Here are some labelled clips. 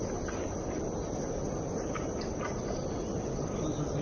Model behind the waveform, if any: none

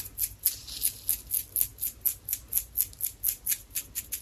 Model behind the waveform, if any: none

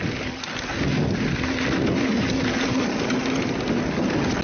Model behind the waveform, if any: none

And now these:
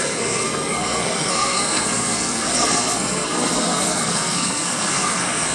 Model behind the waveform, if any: codec, SNAC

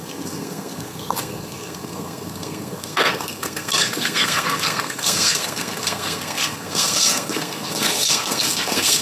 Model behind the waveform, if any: codec, SNAC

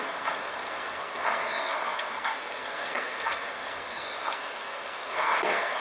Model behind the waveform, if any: codec, SNAC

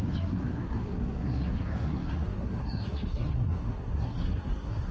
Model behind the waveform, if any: codec, SNAC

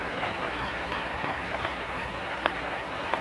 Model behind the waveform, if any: codec, SNAC